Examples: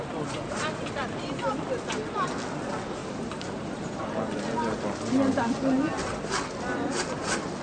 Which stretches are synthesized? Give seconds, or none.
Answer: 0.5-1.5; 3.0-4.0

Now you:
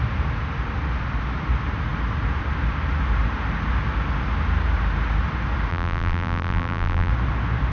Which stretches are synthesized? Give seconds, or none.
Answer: 5.7-7.1

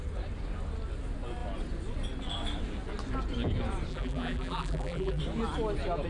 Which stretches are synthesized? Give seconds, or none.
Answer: 3.9-5.2

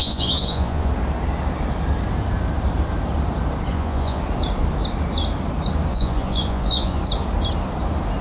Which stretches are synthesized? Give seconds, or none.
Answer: 0.0-0.9; 3.7-4.2; 5.9-7.0

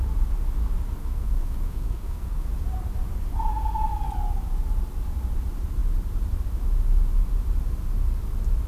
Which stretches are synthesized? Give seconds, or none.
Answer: 1.0-2.5